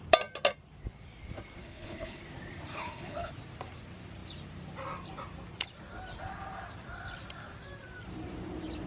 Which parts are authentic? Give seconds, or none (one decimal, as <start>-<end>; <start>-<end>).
0.0-1.6; 2.2-2.7; 3.3-8.9